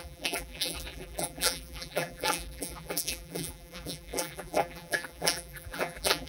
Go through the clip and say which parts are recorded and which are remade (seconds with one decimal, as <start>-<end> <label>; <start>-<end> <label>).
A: 0.0-6.3 remade